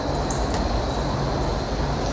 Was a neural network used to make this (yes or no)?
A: no